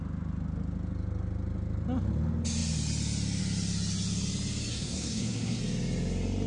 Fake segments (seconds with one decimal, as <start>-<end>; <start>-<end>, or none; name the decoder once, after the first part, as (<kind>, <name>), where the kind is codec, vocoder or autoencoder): 4.7-5.6 (codec, SNAC)